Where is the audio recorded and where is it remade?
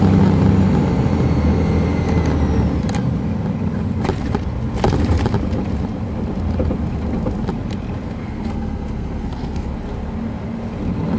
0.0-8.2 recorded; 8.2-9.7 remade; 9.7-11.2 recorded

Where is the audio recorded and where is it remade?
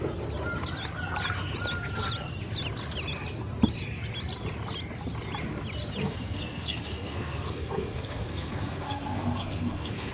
0.0-6.0 recorded; 6.0-10.1 remade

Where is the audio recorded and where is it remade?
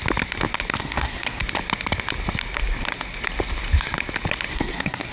0.0-0.8 recorded; 0.8-1.4 remade; 1.4-4.5 recorded; 4.5-5.1 remade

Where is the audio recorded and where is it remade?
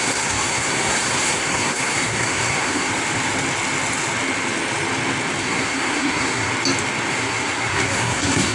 0.0-2.9 remade; 2.9-5.4 recorded; 5.4-6.5 remade; 6.5-7.1 recorded; 7.1-8.5 remade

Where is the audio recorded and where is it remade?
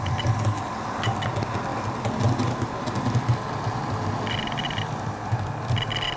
0.0-6.2 recorded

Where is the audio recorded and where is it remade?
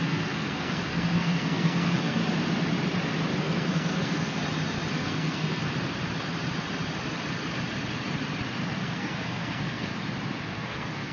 0.0-2.2 remade; 2.2-3.4 recorded; 3.4-4.4 remade; 4.4-4.9 recorded; 4.9-5.6 remade; 5.6-8.8 recorded; 8.8-9.9 remade; 9.9-10.4 recorded; 10.4-11.1 remade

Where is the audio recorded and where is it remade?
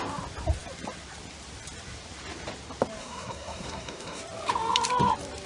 0.0-3.0 recorded; 3.0-4.2 remade; 4.2-5.5 recorded